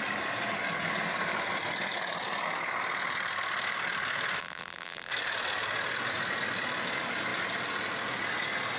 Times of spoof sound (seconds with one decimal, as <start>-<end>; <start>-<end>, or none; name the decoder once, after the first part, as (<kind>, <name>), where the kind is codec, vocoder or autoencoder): 4.4-5.1 (vocoder, BigVGAN v2)